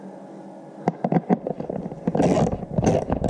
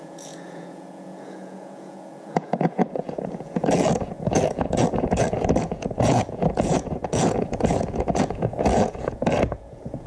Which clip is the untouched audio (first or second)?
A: first